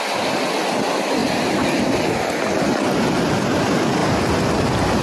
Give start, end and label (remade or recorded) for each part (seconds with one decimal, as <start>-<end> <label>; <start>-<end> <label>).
0.0-5.0 recorded